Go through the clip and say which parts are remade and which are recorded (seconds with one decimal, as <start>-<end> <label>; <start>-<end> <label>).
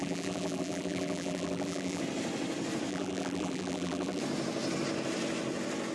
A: 0.0-2.0 remade; 2.0-2.9 recorded; 2.9-4.2 remade; 4.2-5.9 recorded